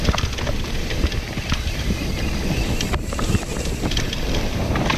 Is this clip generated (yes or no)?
no